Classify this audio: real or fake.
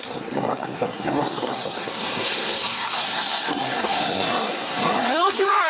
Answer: fake